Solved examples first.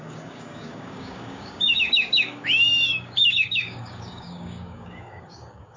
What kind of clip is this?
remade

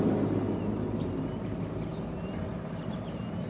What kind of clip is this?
recorded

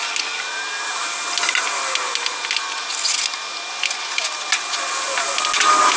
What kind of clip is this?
recorded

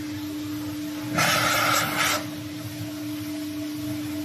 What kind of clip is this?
recorded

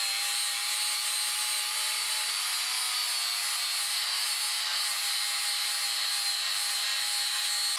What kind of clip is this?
recorded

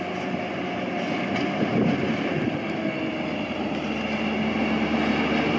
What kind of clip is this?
recorded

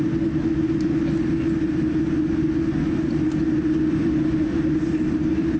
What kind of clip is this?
recorded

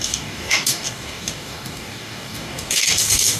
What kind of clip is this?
remade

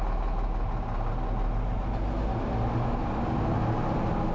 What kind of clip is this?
recorded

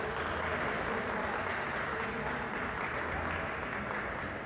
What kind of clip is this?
recorded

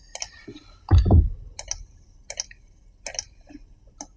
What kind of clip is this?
recorded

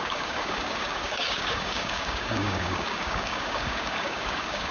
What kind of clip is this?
remade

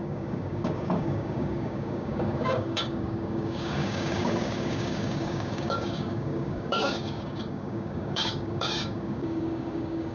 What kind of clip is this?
remade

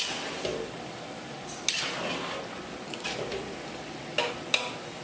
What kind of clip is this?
recorded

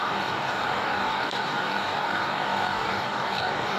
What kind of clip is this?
remade